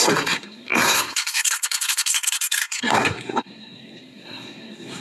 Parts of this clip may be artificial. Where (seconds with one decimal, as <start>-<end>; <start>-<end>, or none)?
0.0-5.0